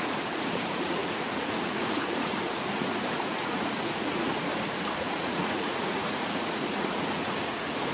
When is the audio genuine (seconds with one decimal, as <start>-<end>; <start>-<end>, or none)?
4.5-5.0